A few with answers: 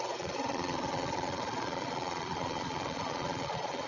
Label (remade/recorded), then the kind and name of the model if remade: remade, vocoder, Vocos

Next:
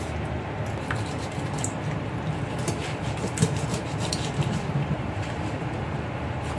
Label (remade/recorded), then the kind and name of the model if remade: remade, vocoder, BigVGAN v2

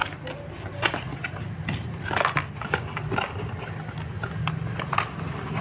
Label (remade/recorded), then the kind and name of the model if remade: recorded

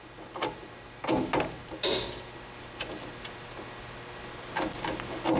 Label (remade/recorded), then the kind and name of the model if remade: recorded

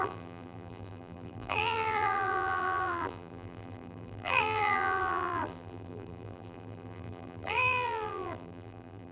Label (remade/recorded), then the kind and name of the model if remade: remade, vocoder, BigVGAN v2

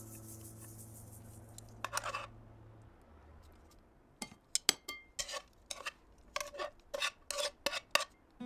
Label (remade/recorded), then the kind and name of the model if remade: recorded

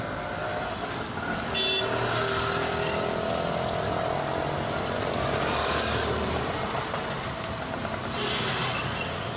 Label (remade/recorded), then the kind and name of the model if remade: recorded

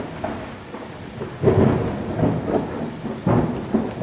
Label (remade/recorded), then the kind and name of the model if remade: recorded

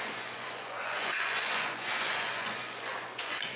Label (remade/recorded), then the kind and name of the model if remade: remade, vocoder, Vocos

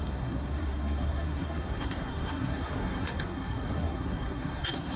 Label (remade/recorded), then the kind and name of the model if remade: remade, codec, SNAC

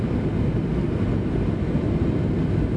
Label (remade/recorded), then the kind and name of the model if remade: recorded